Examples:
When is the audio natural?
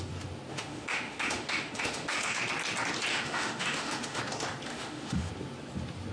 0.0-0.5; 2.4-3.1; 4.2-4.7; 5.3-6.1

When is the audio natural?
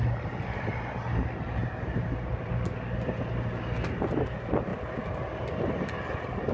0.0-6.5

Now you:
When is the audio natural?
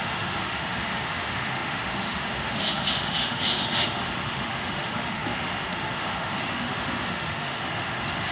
none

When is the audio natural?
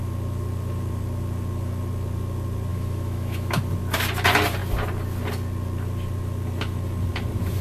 0.0-2.7; 3.6-7.6